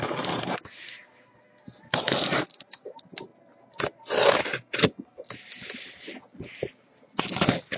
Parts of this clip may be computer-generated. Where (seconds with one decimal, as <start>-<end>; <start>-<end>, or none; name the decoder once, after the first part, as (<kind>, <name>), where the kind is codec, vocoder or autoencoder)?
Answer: none